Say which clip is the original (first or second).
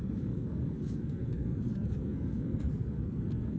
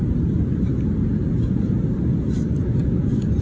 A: second